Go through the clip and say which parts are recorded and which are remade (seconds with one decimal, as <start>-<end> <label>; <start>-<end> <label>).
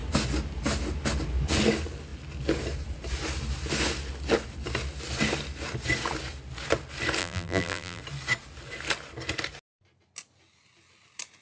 0.0-7.2 recorded; 7.2-8.0 remade; 8.0-11.4 recorded